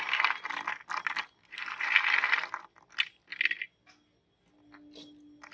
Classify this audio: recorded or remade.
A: recorded